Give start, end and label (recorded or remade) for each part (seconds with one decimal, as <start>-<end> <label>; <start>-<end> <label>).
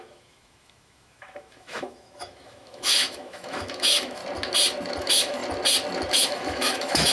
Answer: 0.0-4.2 remade; 4.2-5.0 recorded; 5.0-5.4 remade; 5.4-6.1 recorded; 6.1-7.1 remade